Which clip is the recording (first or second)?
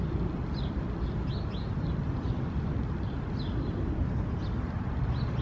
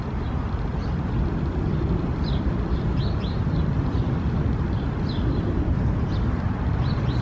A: first